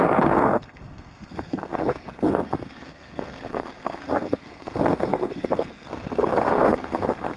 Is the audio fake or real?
fake